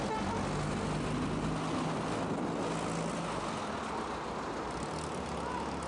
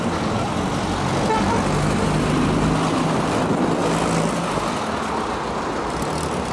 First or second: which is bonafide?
first